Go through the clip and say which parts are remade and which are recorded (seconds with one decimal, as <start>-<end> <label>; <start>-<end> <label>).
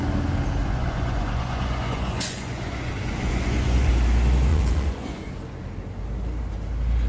0.0-0.6 recorded; 0.6-3.9 remade; 3.9-4.5 recorded; 4.5-5.3 remade; 5.3-7.1 recorded